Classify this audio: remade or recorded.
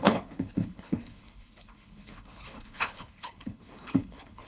remade